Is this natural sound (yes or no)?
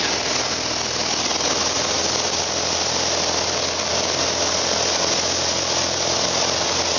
yes